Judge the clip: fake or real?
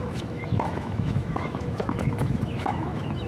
fake